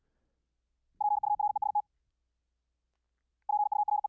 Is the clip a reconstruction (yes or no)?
no